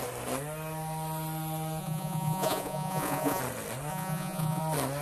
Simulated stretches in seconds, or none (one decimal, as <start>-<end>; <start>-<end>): 1.8-3.4; 3.9-4.6